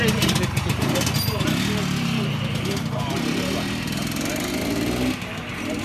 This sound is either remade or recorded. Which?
recorded